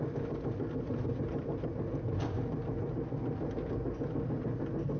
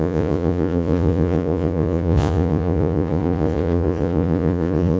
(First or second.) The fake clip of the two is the second